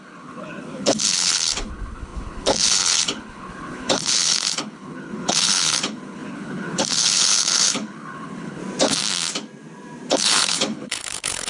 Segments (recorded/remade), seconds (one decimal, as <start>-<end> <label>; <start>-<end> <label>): 0.0-8.6 remade; 8.6-10.1 recorded; 10.1-11.5 remade